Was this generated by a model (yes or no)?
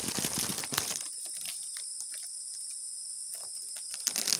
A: no